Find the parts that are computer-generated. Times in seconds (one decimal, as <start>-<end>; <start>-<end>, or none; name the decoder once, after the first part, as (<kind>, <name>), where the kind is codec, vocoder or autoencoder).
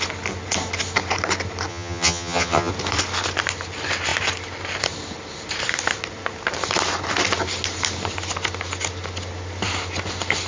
1.7-2.7 (vocoder, HiFi-GAN)